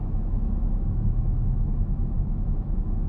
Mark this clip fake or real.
fake